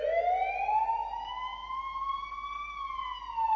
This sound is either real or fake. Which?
real